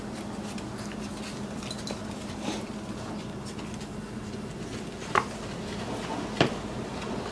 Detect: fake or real real